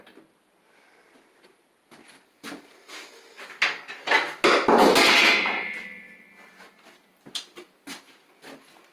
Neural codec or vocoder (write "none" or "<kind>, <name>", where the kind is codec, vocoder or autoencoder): none